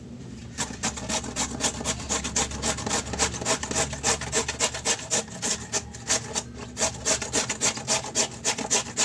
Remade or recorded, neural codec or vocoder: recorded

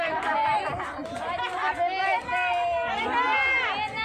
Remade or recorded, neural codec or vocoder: recorded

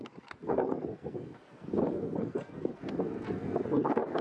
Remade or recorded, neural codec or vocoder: remade, codec, SNAC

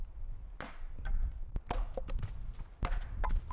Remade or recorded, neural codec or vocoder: recorded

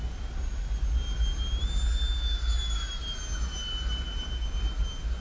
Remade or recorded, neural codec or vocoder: recorded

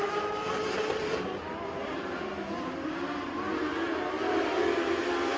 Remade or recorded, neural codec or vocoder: remade, vocoder, BigVGAN v2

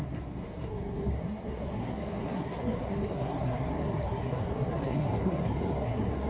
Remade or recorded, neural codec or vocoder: remade, codec, SNAC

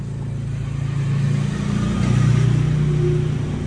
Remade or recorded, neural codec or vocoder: recorded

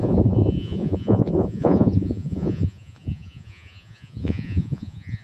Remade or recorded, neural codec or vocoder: remade, vocoder, Vocos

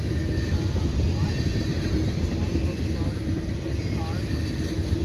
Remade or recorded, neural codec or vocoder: recorded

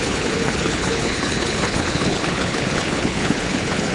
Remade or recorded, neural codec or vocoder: remade, codec, HILCodec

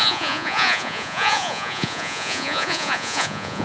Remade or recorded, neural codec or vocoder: remade, vocoder, Vocos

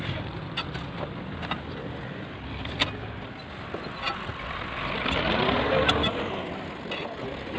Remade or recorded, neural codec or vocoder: recorded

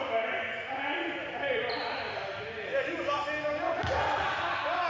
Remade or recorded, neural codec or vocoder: recorded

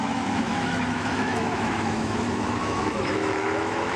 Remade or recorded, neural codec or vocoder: remade, autoencoder, DAC-VAE